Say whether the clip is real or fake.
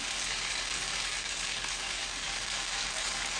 fake